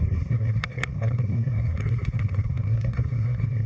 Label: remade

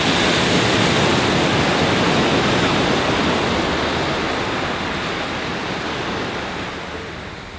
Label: recorded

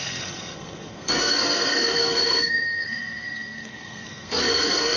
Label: remade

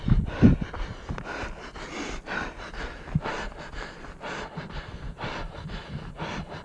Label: recorded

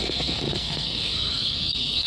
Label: remade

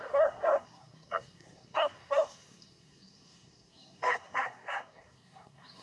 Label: remade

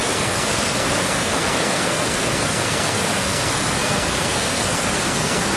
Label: remade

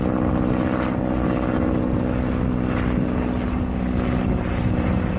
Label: recorded